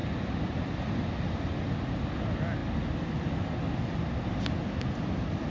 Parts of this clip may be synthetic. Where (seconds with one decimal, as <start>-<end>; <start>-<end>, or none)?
none